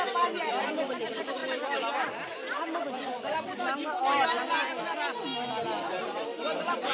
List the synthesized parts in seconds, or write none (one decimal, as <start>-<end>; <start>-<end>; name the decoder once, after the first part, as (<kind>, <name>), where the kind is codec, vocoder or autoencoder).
none